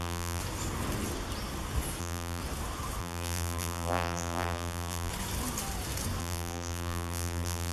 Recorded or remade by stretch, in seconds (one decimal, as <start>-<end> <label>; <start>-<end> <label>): 0.0-0.4 remade; 0.4-2.0 recorded; 2.0-2.4 remade; 2.4-3.0 recorded; 3.0-5.1 remade; 5.1-6.2 recorded; 6.2-7.7 remade